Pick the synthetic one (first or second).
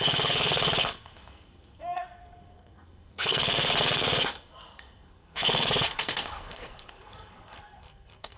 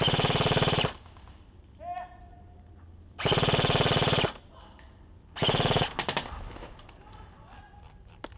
first